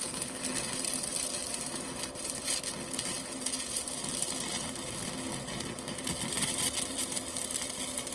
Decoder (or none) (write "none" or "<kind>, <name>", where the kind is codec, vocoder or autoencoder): none